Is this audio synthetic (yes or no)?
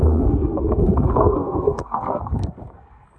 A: yes